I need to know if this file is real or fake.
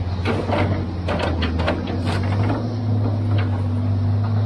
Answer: real